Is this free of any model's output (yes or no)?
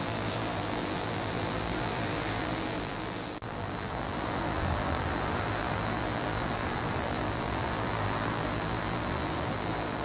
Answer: no